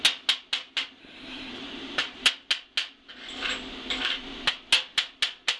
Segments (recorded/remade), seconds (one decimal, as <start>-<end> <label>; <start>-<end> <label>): 0.0-1.0 recorded; 1.0-1.5 remade; 1.5-5.6 recorded